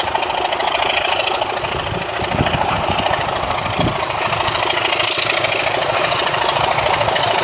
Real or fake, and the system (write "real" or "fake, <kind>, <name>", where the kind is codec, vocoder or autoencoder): real